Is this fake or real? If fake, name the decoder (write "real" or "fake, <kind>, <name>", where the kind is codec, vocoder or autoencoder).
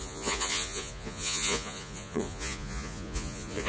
fake, vocoder, Vocos